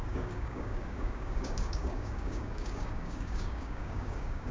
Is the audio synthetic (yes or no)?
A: yes